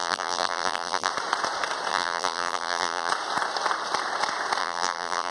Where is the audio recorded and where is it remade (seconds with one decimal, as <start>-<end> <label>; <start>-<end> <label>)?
0.0-1.1 remade; 1.1-1.9 recorded; 1.9-3.1 remade; 3.1-4.6 recorded; 4.6-5.3 remade